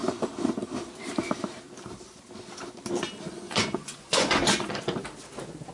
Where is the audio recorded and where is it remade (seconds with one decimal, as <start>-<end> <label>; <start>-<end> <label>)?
0.0-3.3 recorded; 3.3-4.8 remade; 4.8-5.7 recorded